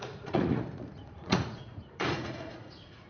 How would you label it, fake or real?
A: fake